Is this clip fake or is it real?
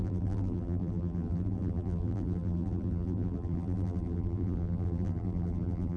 fake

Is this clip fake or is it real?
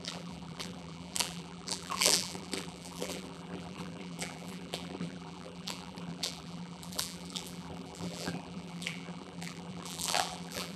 fake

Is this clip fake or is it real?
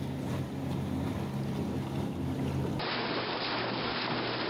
real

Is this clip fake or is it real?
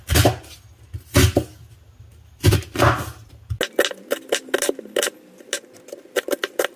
real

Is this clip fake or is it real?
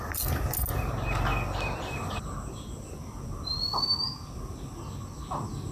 real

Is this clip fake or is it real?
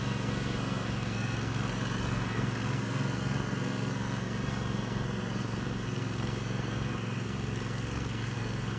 fake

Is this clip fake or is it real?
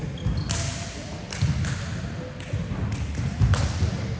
real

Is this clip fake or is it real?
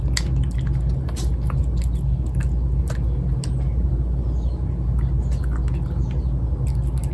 real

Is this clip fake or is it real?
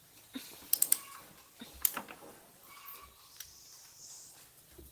real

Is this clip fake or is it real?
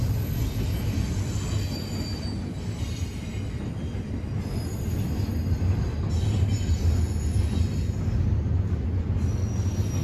real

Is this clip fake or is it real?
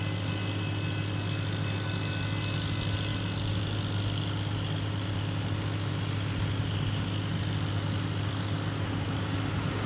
real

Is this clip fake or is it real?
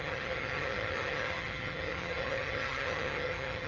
fake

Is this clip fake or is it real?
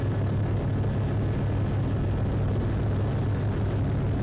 real